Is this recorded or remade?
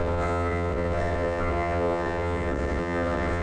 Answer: remade